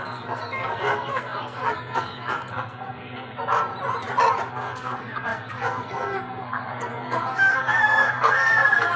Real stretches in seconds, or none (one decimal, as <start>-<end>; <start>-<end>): 3.7-4.5